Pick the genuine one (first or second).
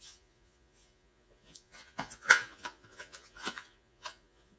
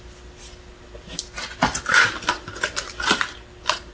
second